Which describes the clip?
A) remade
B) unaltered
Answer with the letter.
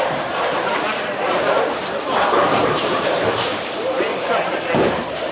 A